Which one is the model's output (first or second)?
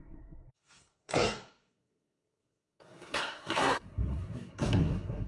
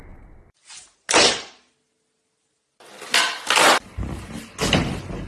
first